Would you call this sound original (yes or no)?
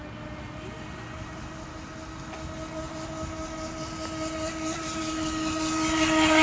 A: yes